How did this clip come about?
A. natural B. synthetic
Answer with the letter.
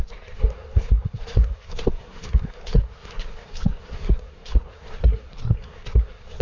B